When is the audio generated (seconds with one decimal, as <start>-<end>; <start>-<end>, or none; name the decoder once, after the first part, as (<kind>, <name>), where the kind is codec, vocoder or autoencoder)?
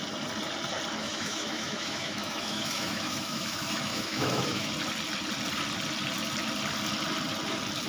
1.0-4.7 (autoencoder, DAC-VAE)